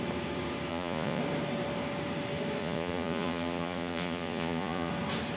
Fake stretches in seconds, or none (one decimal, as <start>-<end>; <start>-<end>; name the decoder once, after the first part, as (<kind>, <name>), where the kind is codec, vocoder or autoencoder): 0.7-1.2 (vocoder, Vocos); 2.6-4.9